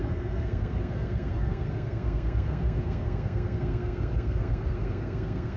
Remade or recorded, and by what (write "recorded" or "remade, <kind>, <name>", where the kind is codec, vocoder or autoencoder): remade, codec, SNAC